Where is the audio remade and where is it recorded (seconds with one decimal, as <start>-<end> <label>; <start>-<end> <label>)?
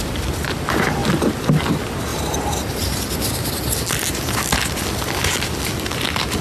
0.0-6.4 recorded